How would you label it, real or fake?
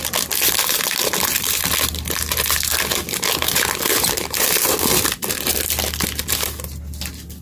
real